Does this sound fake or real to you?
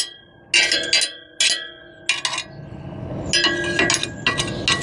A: real